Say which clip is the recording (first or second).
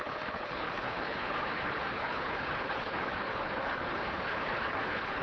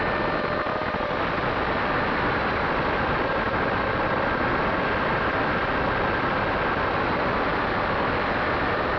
second